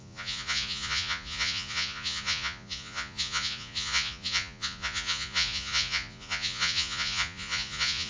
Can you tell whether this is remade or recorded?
remade